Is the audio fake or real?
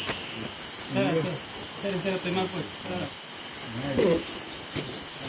real